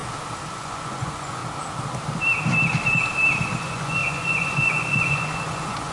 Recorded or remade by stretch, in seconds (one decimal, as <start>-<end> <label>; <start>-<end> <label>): 0.0-0.5 recorded; 0.5-1.4 remade; 1.4-3.6 recorded; 3.6-5.9 remade